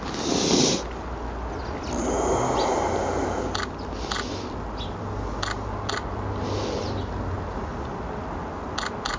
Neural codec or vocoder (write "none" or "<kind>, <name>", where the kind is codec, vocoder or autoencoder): none